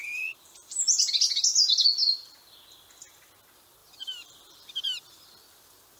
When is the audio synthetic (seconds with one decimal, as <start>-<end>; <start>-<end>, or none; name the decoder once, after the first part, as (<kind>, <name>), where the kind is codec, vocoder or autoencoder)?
0.0-1.0 (vocoder, BigVGAN v2); 3.8-6.0